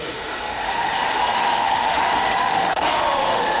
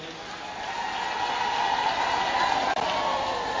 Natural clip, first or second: second